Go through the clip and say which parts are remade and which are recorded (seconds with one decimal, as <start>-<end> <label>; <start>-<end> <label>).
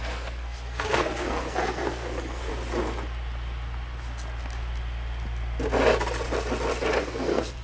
0.0-2.5 remade; 2.5-7.0 recorded; 7.0-7.6 remade